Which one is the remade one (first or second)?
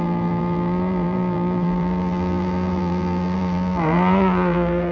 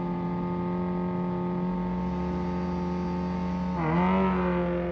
first